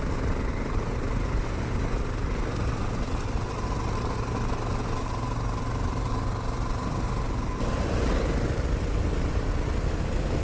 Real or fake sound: real